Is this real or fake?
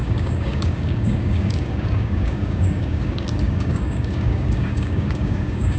fake